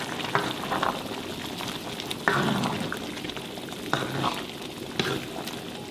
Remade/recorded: recorded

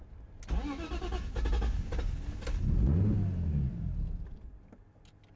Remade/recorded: recorded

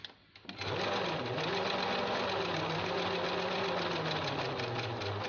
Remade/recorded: recorded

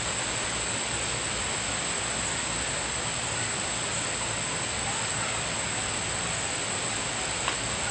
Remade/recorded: recorded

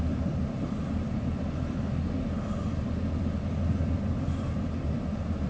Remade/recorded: recorded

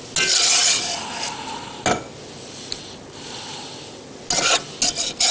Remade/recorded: recorded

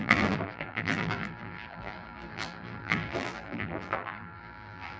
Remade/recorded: remade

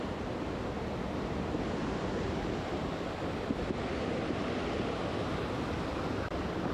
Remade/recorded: recorded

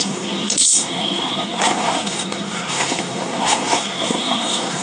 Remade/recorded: remade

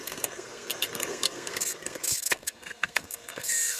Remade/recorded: remade